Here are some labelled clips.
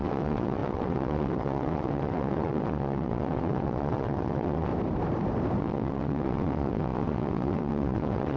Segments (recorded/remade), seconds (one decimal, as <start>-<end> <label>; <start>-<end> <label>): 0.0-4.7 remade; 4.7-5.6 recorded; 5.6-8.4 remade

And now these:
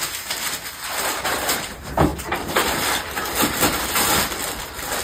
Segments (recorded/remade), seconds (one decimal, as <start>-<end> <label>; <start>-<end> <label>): 0.0-5.0 recorded

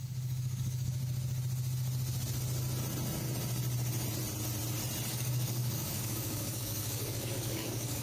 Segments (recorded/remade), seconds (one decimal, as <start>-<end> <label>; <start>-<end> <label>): 0.0-1.0 remade; 1.0-5.1 recorded; 5.1-8.0 remade

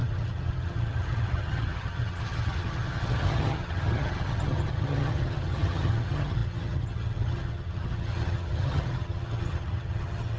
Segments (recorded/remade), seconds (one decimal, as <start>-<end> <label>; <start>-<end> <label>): 0.0-10.4 remade

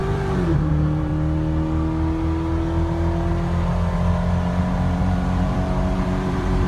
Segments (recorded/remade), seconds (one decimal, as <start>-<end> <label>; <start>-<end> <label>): 0.0-1.1 remade; 1.1-4.6 recorded; 4.6-6.7 remade

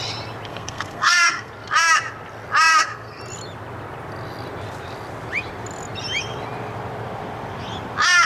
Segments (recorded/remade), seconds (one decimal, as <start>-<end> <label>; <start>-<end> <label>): 0.0-0.5 recorded; 0.5-1.5 remade; 1.5-2.7 recorded; 2.7-3.2 remade; 3.2-8.3 recorded

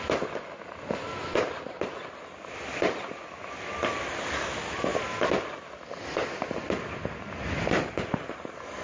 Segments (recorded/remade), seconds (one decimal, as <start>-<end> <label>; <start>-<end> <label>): 0.0-8.8 recorded